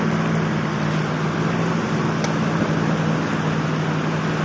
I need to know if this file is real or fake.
real